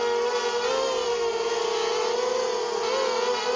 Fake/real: real